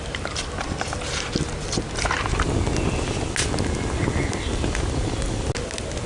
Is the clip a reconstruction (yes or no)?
no